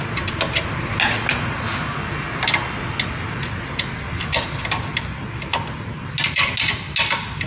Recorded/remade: recorded